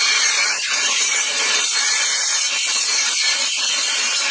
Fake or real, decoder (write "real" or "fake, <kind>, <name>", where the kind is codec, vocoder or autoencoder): real